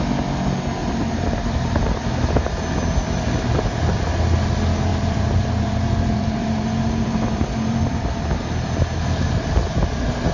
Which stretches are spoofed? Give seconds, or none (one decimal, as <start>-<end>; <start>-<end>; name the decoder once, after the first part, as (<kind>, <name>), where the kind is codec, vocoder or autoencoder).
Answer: 0.8-2.0 (vocoder, BigVGAN v2); 4.9-8.4